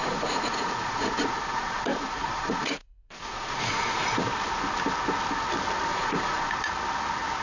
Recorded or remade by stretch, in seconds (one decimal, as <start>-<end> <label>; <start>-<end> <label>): 0.0-4.2 remade; 4.2-5.9 recorded; 5.9-6.5 remade; 6.5-7.4 recorded